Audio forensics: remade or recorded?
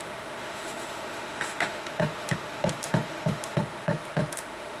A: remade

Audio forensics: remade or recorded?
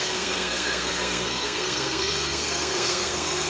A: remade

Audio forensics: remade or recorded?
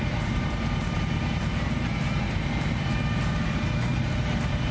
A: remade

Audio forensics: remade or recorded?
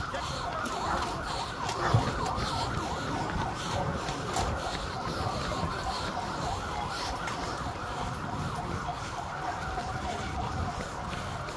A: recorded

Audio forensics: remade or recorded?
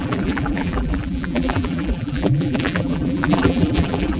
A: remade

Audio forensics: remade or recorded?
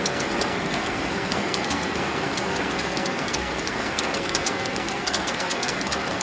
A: remade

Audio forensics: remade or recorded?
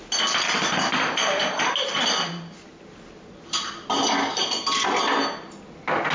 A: recorded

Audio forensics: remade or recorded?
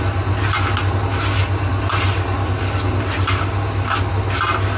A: recorded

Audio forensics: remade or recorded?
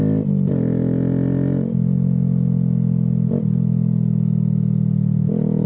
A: recorded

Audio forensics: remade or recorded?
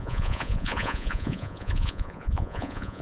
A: remade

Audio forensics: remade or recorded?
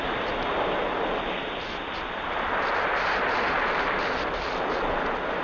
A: recorded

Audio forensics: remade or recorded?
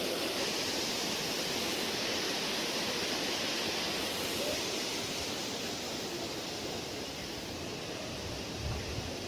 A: recorded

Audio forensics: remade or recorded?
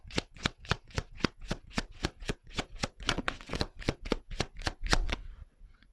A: remade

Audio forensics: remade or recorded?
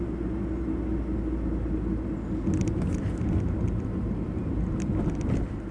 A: recorded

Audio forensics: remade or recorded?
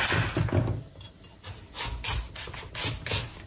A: recorded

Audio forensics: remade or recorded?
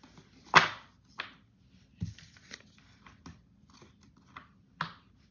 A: recorded